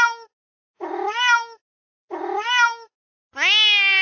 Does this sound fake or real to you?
real